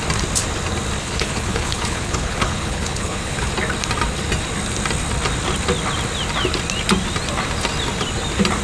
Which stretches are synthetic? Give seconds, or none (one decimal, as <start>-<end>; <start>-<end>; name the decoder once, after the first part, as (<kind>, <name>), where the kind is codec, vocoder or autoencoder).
1.0-3.5 (codec, HILCodec)